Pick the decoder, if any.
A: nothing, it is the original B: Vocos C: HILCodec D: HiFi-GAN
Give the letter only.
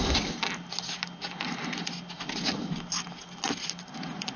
A